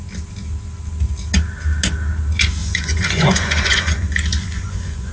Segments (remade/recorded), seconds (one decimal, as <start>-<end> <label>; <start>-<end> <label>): 0.0-2.6 recorded; 2.6-5.1 remade